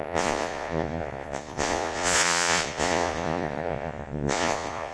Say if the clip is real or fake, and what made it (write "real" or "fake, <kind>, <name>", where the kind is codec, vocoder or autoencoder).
fake, vocoder, Vocos